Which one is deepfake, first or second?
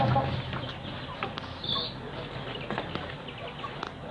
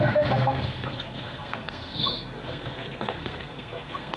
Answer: second